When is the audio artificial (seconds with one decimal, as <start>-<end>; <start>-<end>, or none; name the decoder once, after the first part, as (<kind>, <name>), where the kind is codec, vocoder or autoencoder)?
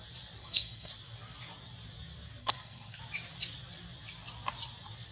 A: 0.4-0.9 (codec, SNAC); 2.4-3.0